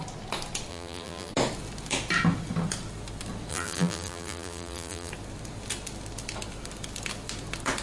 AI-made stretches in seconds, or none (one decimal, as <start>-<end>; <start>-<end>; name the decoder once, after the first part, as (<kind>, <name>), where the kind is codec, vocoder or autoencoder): 0.7-1.3 (vocoder, BigVGAN v2); 3.5-5.1